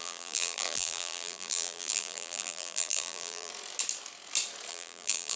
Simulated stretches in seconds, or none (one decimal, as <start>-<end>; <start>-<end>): 0.0-3.5; 4.7-5.4